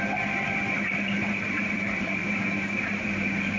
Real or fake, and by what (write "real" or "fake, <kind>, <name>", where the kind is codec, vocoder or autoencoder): fake, vocoder, BigVGAN v2